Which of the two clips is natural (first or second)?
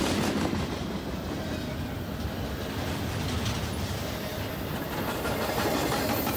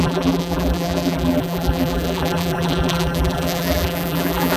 first